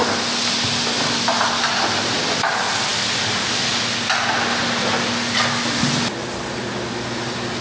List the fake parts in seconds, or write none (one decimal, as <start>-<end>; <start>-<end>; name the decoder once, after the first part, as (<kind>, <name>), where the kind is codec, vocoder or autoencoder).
none